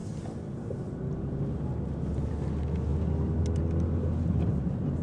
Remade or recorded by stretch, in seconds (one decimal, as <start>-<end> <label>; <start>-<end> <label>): 0.0-5.0 recorded